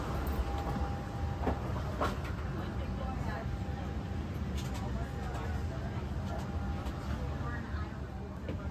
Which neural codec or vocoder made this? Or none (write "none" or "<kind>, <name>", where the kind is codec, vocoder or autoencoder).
none